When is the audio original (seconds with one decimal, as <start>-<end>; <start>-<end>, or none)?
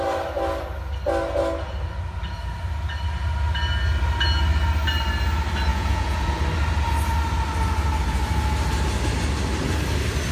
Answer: 0.0-5.7; 6.4-10.3